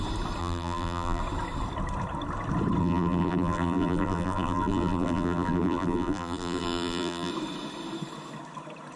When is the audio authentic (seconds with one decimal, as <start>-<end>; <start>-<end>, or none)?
0.0-0.4; 1.2-2.8; 7.3-9.0